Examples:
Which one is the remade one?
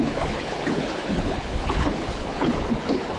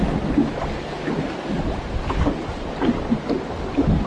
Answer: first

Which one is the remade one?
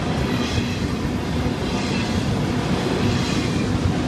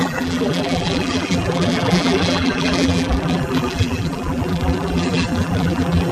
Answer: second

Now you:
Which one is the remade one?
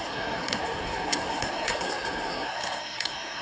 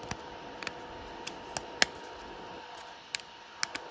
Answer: first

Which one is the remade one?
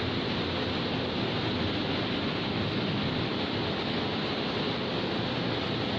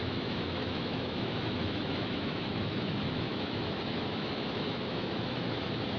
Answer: second